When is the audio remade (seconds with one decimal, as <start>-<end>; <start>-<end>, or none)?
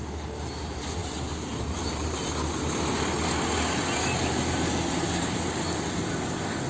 1.0-2.3